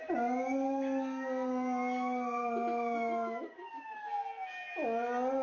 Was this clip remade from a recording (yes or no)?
no